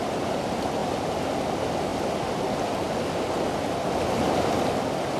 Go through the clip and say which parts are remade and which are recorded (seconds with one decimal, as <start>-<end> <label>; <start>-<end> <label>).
0.0-5.2 recorded